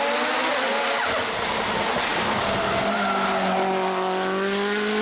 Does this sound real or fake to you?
real